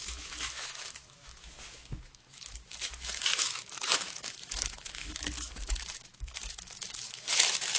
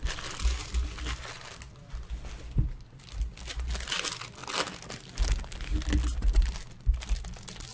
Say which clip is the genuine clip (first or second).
second